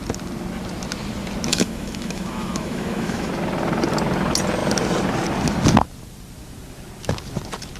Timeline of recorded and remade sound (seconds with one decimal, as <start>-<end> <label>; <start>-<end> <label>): 0.0-1.5 recorded; 1.5-3.3 remade; 3.3-7.8 recorded